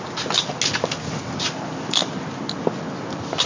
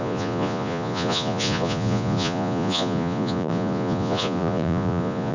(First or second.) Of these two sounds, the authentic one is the first